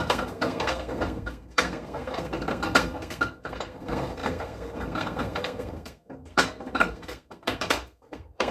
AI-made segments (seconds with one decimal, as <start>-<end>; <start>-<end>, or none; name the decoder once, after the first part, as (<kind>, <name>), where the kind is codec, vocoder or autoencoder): 0.0-8.5 (codec, SNAC)